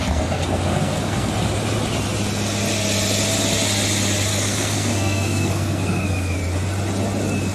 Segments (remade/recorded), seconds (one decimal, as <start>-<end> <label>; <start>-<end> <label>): 0.0-1.3 remade; 1.3-4.3 recorded; 4.3-6.4 remade; 6.4-7.5 recorded